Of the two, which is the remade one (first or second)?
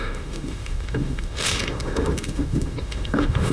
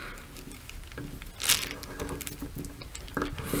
first